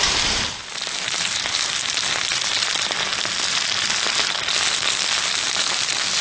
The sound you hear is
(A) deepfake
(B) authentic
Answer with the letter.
B